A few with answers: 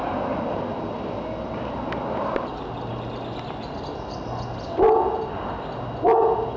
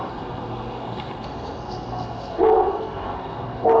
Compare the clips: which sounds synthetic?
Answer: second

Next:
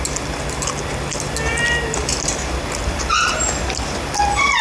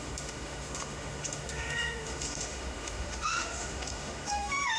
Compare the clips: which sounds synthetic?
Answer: second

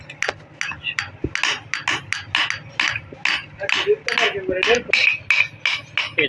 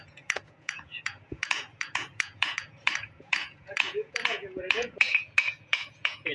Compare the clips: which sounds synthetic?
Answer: second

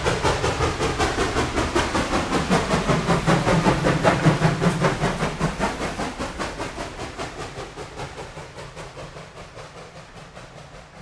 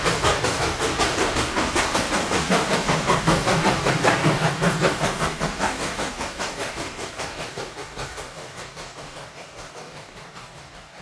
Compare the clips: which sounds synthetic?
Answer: second